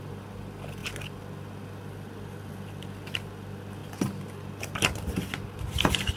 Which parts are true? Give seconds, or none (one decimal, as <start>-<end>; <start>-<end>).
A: 0.0-6.2